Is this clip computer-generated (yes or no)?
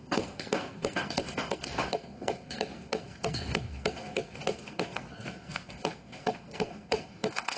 yes